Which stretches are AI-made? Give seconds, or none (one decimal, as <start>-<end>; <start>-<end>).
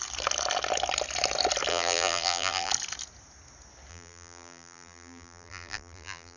1.7-2.7; 3.9-6.4